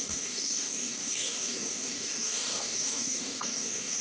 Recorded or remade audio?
remade